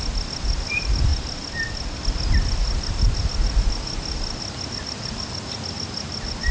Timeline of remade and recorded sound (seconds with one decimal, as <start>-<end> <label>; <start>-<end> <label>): 0.0-6.5 recorded